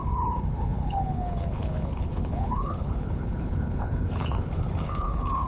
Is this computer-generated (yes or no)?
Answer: yes